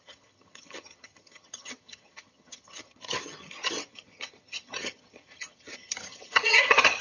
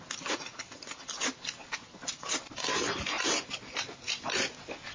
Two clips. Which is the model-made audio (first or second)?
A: first